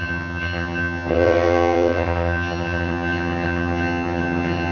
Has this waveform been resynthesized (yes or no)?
yes